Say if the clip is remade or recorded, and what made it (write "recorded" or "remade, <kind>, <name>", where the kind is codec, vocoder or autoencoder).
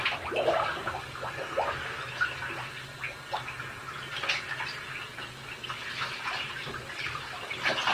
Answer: recorded